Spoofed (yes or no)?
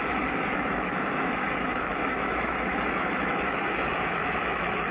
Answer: yes